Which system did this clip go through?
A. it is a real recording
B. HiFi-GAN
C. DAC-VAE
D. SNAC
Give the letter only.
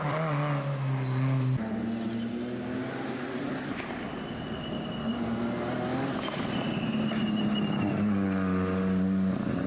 A